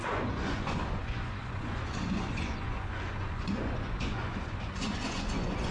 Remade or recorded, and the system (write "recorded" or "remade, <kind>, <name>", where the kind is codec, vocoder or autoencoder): remade, vocoder, Vocos